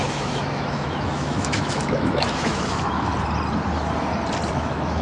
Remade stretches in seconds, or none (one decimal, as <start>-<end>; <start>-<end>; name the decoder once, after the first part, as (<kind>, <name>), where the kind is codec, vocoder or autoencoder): 0.0-3.1 (autoencoder, DAC-VAE); 4.5-5.0